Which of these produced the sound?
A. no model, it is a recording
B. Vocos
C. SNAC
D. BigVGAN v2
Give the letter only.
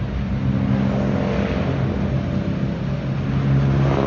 A